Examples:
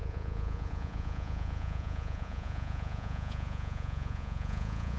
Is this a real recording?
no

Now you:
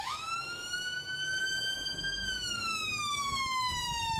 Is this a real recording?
no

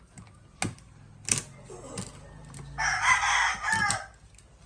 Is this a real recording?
yes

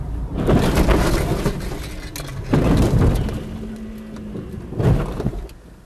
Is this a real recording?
yes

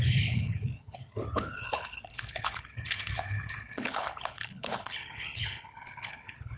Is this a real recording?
no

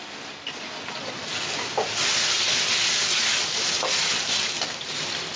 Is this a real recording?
yes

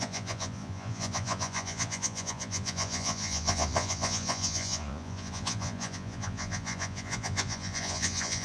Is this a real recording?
no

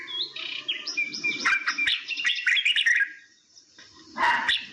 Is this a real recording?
yes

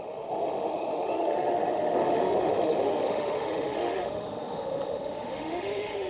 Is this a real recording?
no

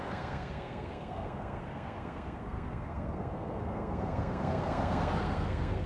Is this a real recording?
no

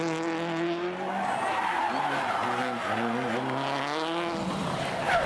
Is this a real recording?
yes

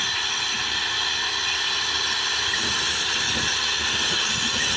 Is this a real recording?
yes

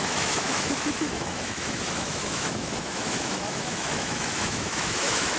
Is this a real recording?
no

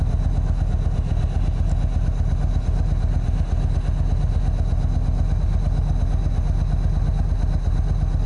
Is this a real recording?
yes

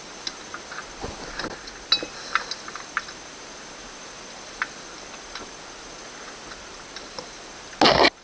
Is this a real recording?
yes